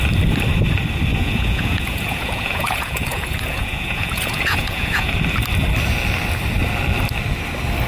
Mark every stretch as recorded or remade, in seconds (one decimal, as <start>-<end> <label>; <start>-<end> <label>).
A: 0.0-1.1 recorded; 1.1-5.1 remade; 5.1-7.9 recorded